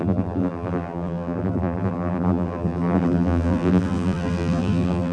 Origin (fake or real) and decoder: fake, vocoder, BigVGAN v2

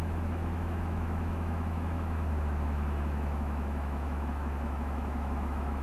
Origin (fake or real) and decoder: fake, autoencoder, DAC-VAE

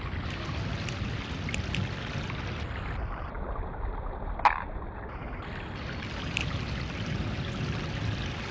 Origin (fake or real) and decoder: real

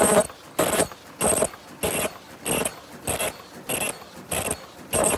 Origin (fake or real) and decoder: real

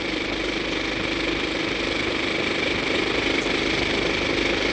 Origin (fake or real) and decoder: real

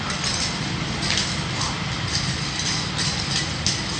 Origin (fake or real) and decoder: real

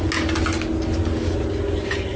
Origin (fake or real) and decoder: real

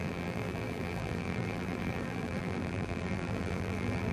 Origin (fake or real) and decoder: fake, vocoder, BigVGAN v2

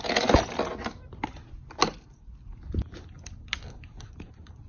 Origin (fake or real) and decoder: real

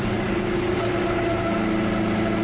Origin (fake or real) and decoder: real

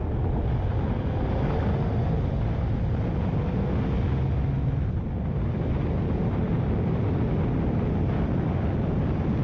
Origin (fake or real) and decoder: real